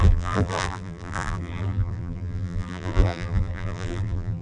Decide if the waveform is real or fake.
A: fake